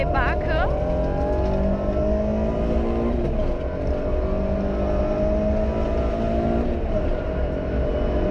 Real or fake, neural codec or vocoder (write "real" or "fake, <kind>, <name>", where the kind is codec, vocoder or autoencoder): real